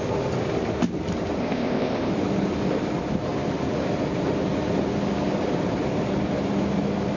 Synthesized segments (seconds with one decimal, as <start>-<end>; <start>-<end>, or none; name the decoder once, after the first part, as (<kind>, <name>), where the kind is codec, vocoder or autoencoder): 1.4-2.1 (codec, ZipCodec)